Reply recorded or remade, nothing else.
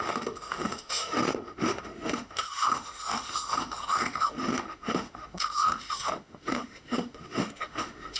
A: remade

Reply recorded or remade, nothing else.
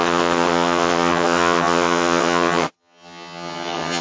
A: remade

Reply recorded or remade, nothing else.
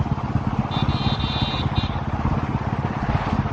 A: recorded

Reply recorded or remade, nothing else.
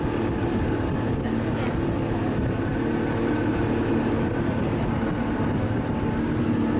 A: recorded